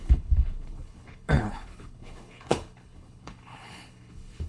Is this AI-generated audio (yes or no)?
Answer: yes